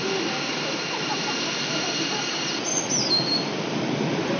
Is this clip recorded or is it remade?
recorded